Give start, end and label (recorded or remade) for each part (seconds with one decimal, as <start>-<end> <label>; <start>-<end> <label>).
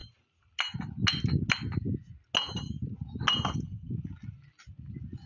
0.0-5.3 recorded